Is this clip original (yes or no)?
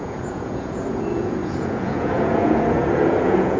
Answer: no